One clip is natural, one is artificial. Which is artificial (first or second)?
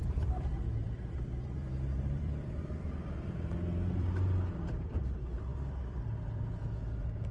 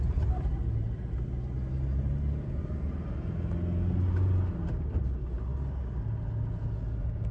first